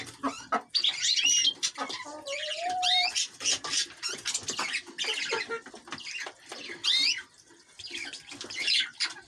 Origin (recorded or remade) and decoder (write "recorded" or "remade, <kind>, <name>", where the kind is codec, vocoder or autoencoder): recorded